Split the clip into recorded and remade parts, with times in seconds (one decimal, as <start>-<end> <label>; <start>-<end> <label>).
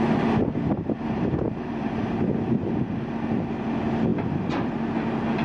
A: 0.0-0.4 recorded; 0.4-2.3 remade; 2.3-4.1 recorded; 4.1-4.8 remade; 4.8-5.4 recorded